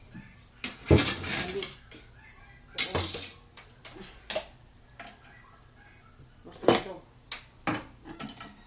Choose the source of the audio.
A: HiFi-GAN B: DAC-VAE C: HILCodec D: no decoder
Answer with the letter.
D